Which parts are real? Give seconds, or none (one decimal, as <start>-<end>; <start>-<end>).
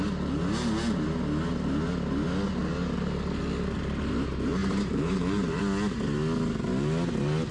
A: 0.0-4.6; 5.6-7.5